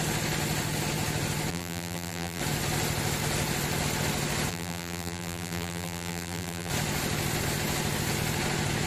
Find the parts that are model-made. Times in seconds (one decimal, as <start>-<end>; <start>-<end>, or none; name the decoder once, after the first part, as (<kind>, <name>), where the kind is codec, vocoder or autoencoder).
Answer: 1.5-2.4 (vocoder, BigVGAN v2); 4.5-6.7